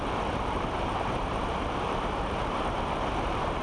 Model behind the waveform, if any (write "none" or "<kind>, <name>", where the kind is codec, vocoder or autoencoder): vocoder, BigVGAN v2